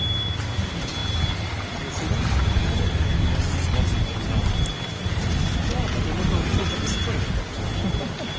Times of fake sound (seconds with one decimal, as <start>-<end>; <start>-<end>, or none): none